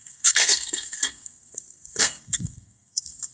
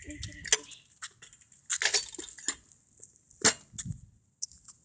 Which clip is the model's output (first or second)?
first